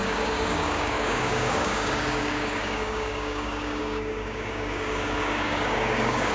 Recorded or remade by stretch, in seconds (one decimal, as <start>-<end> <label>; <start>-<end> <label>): 0.0-6.3 remade